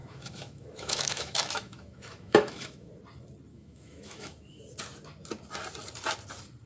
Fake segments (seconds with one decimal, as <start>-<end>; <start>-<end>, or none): 0.0-2.9; 3.5-4.4

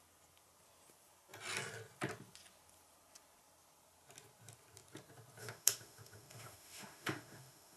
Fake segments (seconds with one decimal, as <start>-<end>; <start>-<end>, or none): 5.4-7.8